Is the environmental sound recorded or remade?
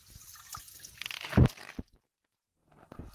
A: recorded